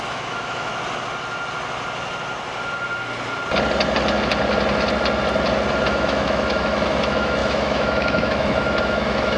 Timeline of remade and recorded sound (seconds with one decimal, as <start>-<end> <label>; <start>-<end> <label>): 0.0-0.7 remade; 0.7-5.9 recorded; 5.9-9.4 remade